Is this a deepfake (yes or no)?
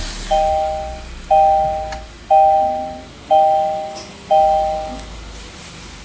no